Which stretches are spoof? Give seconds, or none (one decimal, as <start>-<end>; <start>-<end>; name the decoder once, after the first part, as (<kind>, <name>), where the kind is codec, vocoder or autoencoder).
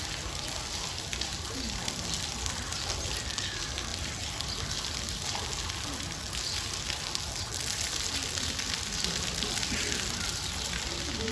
none